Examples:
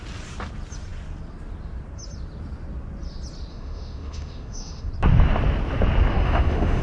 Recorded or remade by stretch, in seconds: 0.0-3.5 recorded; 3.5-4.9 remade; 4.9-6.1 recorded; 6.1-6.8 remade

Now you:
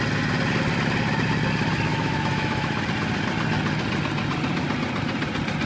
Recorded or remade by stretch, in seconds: 0.0-1.9 recorded; 1.9-2.8 remade; 2.8-5.7 recorded

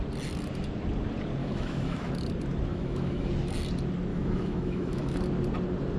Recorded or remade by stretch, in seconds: 0.0-1.4 recorded; 1.4-2.1 remade; 2.1-2.7 recorded; 2.7-3.3 remade; 3.3-4.1 recorded; 4.1-5.2 remade; 5.2-6.0 recorded

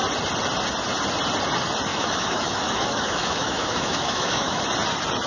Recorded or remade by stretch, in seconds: 0.0-1.9 recorded; 1.9-4.6 remade; 4.6-5.3 recorded

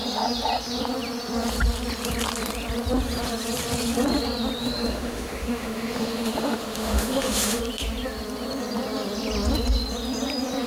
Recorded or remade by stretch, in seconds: 0.0-4.6 recorded; 4.6-7.6 remade; 7.6-10.7 recorded